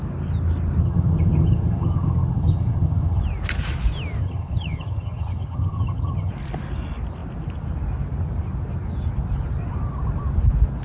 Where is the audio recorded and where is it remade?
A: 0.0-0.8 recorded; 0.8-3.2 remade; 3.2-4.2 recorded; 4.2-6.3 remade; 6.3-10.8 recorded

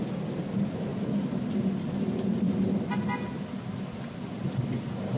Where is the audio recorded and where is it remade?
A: 0.0-5.2 recorded

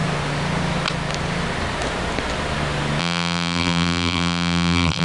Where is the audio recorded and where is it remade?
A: 0.0-3.0 recorded; 3.0-5.0 remade